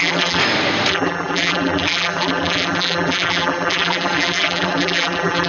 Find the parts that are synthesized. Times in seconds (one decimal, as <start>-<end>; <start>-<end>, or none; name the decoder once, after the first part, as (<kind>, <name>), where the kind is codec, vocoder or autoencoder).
0.0-0.4 (vocoder, BigVGAN v2); 0.9-5.5

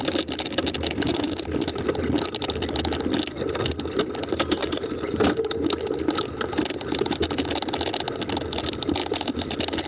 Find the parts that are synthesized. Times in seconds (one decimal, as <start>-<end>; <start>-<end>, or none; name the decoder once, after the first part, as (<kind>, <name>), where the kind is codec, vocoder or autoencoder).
1.1-1.8 (vocoder, BigVGAN v2); 4.6-5.2; 9.0-9.9

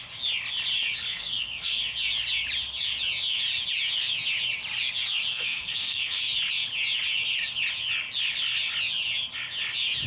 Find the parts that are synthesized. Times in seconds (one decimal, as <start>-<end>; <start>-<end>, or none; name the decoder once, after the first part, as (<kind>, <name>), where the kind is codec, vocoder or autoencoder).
1.1-1.8 (codec, SNAC); 5.3-6.2

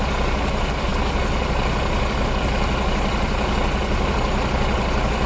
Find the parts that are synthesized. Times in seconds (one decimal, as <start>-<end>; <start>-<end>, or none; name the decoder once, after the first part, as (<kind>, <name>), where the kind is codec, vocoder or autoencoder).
none

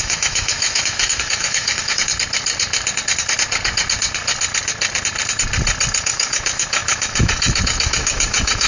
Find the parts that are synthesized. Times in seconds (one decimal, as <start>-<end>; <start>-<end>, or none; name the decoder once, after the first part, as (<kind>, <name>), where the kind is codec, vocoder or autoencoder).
0.0-2.1 (autoencoder, DAC-VAE); 6.0-8.7